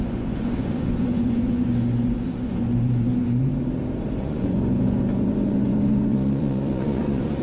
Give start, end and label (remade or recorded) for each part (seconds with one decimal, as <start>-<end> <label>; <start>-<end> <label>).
0.0-3.5 remade; 3.5-4.2 recorded; 4.2-7.4 remade